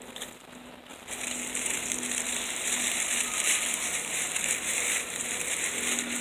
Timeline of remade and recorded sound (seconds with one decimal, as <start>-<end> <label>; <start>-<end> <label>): 0.0-6.2 remade